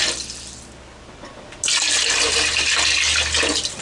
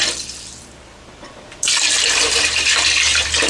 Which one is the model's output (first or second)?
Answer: second